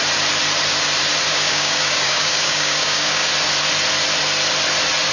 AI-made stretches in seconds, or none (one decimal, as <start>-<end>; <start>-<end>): 1.3-3.3